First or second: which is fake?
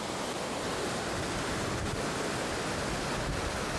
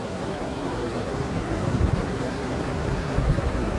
second